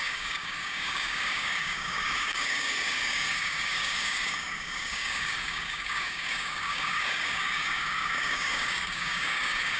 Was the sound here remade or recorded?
remade